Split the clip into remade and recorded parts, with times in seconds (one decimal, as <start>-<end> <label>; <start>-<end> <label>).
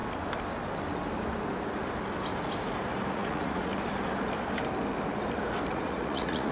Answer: 0.0-3.1 recorded; 3.1-3.7 remade; 3.7-5.7 recorded; 5.7-6.5 remade